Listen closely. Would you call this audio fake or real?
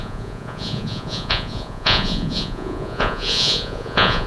fake